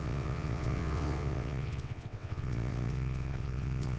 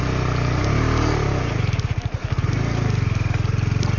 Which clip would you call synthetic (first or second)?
first